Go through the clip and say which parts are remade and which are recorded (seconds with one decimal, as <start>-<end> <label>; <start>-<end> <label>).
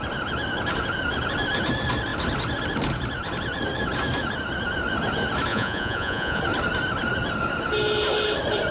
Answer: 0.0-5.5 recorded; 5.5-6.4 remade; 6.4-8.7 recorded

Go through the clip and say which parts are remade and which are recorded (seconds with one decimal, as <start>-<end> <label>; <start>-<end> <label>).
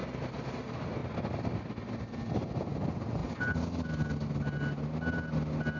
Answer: 0.0-5.8 recorded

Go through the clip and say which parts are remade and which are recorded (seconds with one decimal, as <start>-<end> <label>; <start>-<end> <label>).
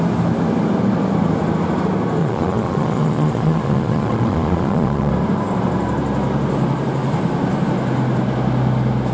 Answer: 0.0-2.2 recorded; 2.2-5.1 remade; 5.1-9.1 recorded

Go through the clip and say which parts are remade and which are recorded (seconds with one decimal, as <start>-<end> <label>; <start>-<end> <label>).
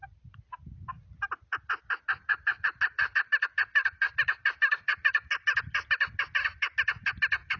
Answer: 0.0-2.2 recorded; 2.2-3.1 remade; 3.1-3.7 recorded; 3.7-5.3 remade; 5.3-7.6 recorded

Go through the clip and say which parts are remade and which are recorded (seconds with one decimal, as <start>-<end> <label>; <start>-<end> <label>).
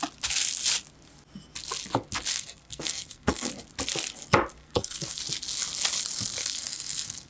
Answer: 0.0-2.3 recorded; 2.3-3.5 remade; 3.5-4.6 recorded; 4.6-5.2 remade; 5.2-6.4 recorded; 6.4-7.3 remade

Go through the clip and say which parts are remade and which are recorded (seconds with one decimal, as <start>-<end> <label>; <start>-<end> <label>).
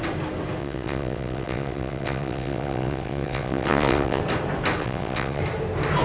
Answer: 0.0-0.6 recorded; 0.6-4.2 remade; 4.2-4.8 recorded; 4.8-5.4 remade; 5.4-6.0 recorded